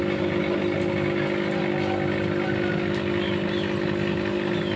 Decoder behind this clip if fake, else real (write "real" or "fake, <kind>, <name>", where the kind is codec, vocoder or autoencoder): real